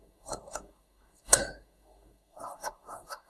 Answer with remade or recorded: remade